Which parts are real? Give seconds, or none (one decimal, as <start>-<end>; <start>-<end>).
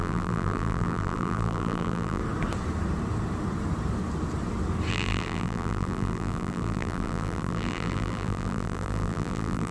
2.2-4.9